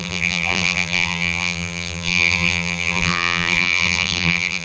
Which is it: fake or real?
fake